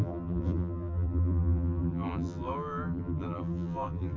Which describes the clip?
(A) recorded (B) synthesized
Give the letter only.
B